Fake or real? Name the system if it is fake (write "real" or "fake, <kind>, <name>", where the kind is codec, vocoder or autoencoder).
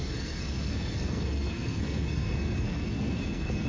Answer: fake, codec, SNAC